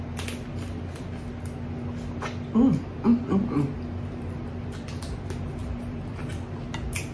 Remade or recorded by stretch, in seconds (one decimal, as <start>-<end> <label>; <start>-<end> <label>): 0.0-5.6 recorded; 5.6-6.3 remade; 6.3-7.1 recorded